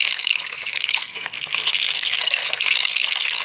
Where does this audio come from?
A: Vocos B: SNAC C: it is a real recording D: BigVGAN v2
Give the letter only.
B